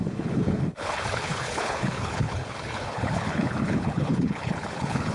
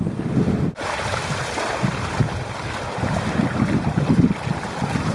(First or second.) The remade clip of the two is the first